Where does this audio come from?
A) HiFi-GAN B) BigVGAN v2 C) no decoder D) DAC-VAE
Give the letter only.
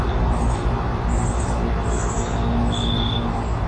C